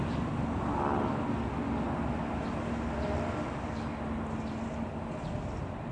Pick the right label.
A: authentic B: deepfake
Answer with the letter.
A